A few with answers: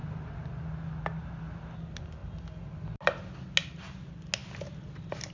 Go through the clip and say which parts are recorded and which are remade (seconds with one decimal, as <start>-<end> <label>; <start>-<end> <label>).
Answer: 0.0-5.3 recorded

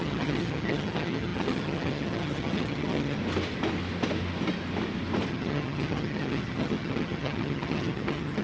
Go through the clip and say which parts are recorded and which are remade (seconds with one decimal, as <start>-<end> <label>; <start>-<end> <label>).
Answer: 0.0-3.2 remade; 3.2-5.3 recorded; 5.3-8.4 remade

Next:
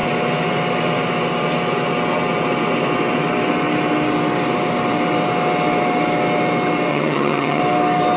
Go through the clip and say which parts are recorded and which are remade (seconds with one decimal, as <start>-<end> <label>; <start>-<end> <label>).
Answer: 0.0-6.9 recorded; 6.9-7.6 remade; 7.6-8.2 recorded

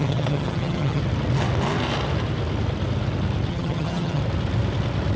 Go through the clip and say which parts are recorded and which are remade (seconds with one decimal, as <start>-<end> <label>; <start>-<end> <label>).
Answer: 0.0-1.0 remade; 1.0-3.5 recorded; 3.5-4.2 remade; 4.2-5.2 recorded

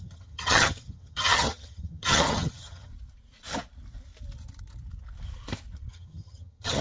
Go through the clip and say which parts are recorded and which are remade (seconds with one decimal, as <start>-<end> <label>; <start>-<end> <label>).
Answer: 0.0-2.9 remade; 2.9-5.9 recorded; 5.9-6.8 remade

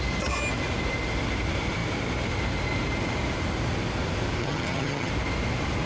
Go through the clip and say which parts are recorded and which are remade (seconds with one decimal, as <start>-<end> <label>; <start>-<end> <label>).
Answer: 0.0-4.4 recorded; 4.4-5.1 remade; 5.1-5.9 recorded